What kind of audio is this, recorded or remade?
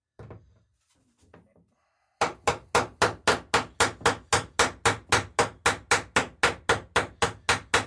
recorded